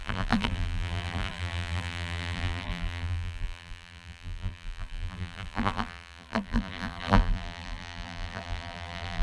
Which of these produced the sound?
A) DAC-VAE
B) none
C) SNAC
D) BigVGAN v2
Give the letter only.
D